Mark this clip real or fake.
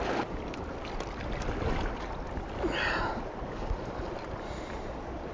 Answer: real